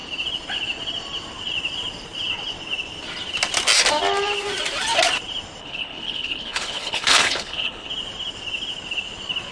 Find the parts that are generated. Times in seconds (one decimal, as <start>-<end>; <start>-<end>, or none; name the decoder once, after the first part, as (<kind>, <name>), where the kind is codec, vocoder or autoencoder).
5.6-7.9 (codec, HILCodec)